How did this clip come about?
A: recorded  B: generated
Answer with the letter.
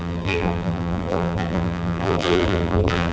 B